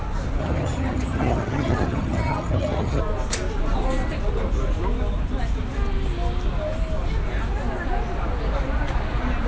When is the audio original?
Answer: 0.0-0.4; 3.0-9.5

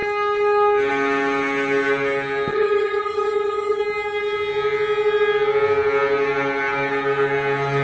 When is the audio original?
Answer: 0.0-2.5; 3.8-7.8

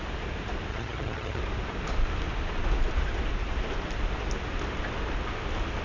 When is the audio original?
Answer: 0.0-0.7; 1.4-5.8

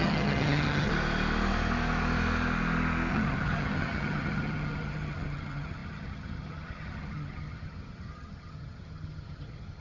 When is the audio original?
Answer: 0.9-3.1